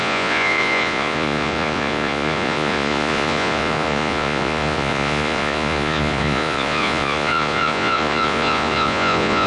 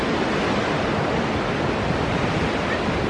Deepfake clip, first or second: first